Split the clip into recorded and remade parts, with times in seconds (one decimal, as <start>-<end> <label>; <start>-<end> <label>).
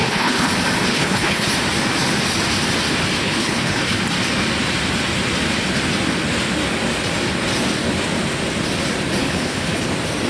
0.0-0.5 remade; 0.5-0.9 recorded; 0.9-1.5 remade; 1.5-3.2 recorded; 3.2-4.0 remade; 4.0-9.2 recorded; 9.2-9.8 remade; 9.8-10.3 recorded